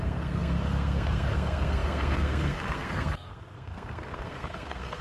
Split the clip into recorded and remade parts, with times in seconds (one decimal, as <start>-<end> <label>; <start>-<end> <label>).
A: 0.0-5.0 remade